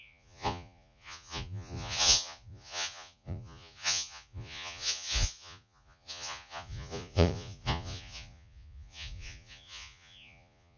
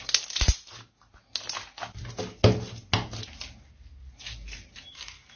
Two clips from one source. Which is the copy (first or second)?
first